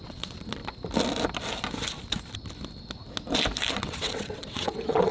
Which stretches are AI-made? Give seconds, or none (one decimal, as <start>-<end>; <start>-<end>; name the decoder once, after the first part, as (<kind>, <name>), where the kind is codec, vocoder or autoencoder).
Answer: 0.0-0.6 (vocoder, WaveNeXt); 3.7-5.1